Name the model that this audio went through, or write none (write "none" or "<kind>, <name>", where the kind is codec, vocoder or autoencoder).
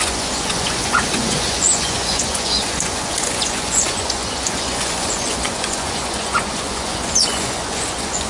vocoder, Vocos